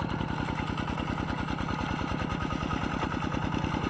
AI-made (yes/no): no